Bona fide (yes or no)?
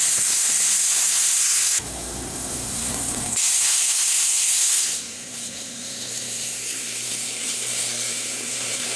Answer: no